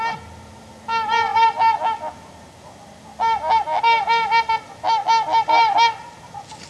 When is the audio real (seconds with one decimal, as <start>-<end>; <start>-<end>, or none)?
0.0-6.7